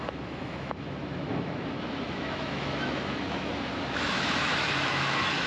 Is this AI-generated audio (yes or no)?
yes